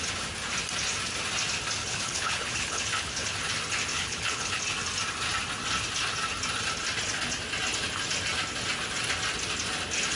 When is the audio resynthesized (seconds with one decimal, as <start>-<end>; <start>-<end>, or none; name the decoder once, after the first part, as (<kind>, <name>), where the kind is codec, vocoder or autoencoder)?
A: 1.8-3.5 (codec, HILCodec); 3.9-4.6